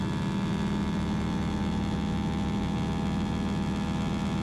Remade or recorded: recorded